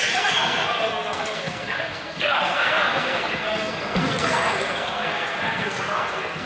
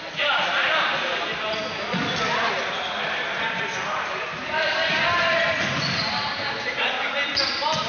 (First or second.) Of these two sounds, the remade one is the first